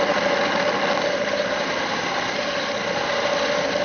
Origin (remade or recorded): recorded